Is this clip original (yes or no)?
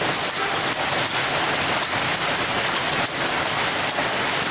yes